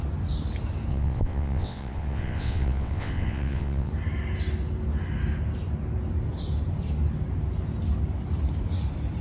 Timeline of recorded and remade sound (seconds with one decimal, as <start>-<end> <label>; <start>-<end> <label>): 0.0-0.9 recorded; 0.9-3.9 remade; 3.9-9.2 recorded